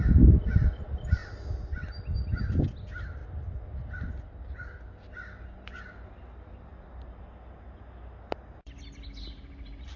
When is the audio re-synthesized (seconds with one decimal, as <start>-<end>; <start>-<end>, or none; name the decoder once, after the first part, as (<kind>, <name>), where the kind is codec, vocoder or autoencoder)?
none